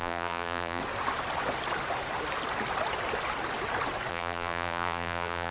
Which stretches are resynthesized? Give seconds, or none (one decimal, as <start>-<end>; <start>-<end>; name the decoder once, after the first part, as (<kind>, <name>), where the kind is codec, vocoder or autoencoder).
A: 0.0-0.8 (vocoder, BigVGAN v2); 4.1-5.5